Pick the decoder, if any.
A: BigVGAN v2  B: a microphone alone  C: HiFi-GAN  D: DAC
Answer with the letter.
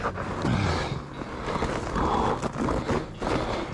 B